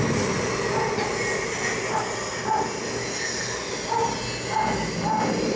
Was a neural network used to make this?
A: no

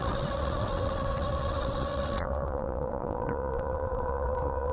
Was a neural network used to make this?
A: yes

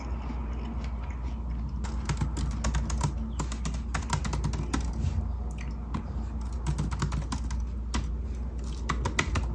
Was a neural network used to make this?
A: no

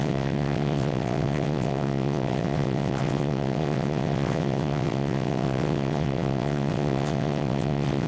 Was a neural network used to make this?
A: yes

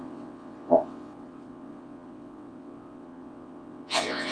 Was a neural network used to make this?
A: yes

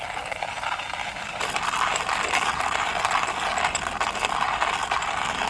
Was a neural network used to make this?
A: no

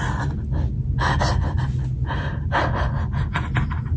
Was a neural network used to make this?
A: no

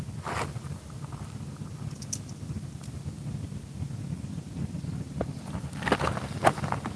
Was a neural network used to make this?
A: no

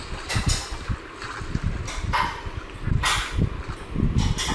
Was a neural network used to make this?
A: no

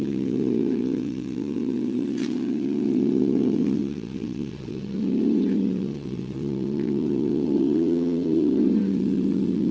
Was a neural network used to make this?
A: yes